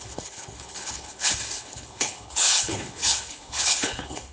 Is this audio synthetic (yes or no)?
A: yes